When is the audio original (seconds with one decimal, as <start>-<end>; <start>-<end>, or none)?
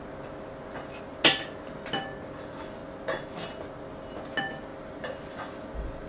0.0-6.1